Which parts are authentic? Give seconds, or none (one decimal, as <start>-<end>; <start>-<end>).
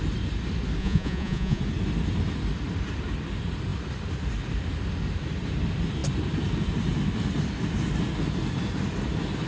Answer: 0.0-0.8; 1.6-9.5